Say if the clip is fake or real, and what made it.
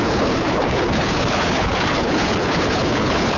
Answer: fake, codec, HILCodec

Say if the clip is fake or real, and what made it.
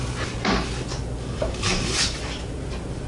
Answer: real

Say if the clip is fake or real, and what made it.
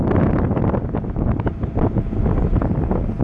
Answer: real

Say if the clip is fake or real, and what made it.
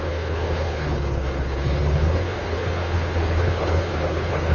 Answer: fake, codec, HILCodec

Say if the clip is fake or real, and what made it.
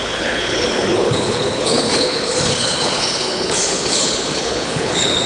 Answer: fake, codec, HILCodec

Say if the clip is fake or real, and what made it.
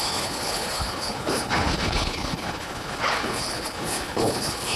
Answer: fake, codec, HILCodec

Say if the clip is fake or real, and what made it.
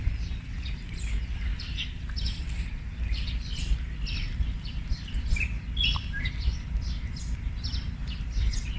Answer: real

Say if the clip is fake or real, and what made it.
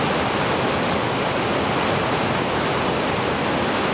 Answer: real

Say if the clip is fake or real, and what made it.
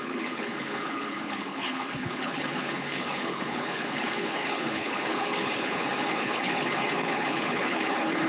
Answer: fake, codec, HILCodec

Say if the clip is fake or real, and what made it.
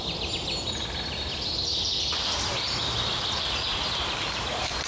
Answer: real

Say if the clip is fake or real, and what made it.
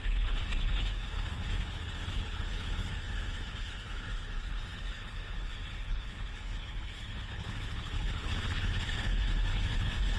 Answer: fake, codec, HILCodec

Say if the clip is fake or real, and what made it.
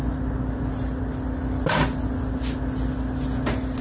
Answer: real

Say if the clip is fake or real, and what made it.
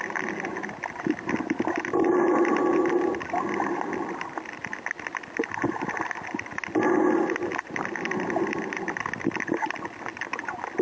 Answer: real